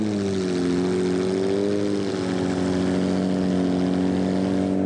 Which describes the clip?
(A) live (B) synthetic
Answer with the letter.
A